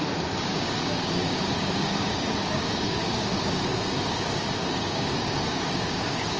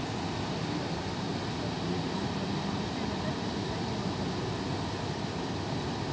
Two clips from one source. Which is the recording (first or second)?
second